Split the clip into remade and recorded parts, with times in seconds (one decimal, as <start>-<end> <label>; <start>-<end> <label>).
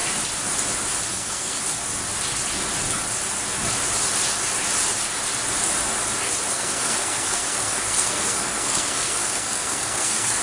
0.0-1.1 recorded; 1.1-1.6 remade; 1.6-6.5 recorded; 6.5-10.4 remade